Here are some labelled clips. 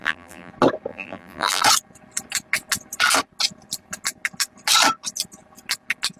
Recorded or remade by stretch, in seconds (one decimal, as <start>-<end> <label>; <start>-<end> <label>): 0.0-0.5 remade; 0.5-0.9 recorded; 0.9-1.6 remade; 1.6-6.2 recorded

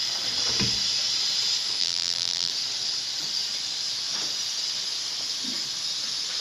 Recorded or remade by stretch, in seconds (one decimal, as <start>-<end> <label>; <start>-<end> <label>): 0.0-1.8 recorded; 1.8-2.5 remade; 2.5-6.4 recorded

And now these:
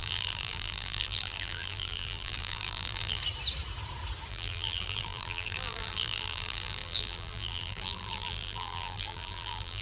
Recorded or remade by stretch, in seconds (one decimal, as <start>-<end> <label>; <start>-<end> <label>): 0.0-3.2 remade; 3.2-4.3 recorded; 4.3-9.8 remade

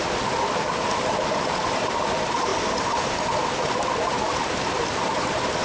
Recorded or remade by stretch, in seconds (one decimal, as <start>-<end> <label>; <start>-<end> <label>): 0.0-5.6 recorded